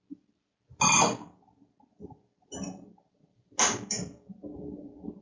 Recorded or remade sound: recorded